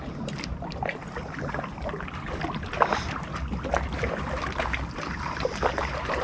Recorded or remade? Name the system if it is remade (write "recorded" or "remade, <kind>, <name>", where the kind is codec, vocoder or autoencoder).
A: recorded